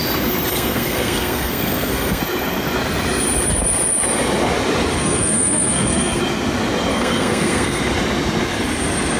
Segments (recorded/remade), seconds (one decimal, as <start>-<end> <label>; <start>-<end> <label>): 0.0-0.5 recorded; 0.5-2.2 remade; 2.2-5.0 recorded; 5.0-6.2 remade; 6.2-6.9 recorded; 6.9-7.8 remade; 7.8-9.2 recorded